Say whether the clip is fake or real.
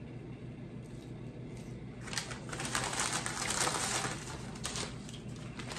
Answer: real